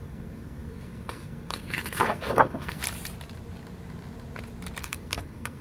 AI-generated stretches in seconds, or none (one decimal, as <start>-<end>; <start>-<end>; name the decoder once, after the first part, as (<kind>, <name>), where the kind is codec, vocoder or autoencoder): 0.0-2.8 (codec, SNAC); 4.8-5.6